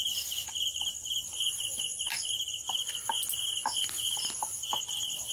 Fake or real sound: real